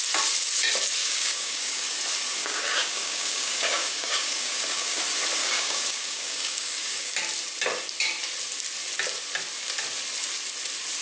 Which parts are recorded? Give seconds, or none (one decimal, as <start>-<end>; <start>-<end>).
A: 0.0-1.0; 2.0-2.4; 5.0-5.4; 7.1-11.0